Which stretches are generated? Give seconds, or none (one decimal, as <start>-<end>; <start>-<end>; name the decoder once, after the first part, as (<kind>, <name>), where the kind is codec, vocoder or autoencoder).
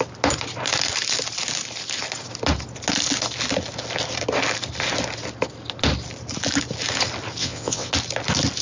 7.4-7.9 (vocoder, WaveNeXt)